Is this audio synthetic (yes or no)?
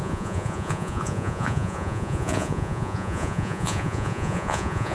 yes